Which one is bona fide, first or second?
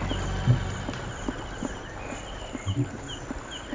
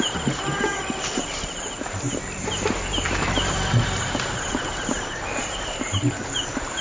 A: first